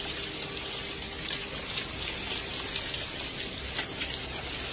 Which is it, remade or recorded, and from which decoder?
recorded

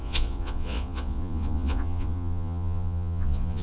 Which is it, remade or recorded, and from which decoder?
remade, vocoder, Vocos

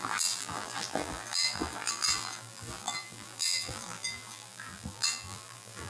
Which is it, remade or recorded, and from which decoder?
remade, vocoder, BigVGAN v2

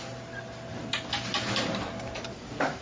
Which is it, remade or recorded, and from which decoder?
remade, vocoder, BigVGAN v2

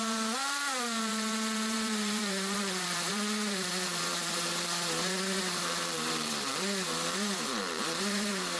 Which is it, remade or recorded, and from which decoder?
remade, vocoder, BigVGAN v2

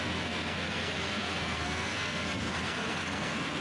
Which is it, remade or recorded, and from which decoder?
remade, codec, SNAC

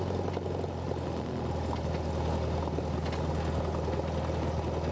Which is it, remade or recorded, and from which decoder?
recorded